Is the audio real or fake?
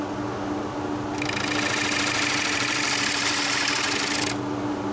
real